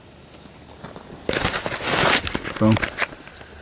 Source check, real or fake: real